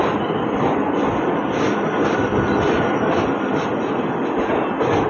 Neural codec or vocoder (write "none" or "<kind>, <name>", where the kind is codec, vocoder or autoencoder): none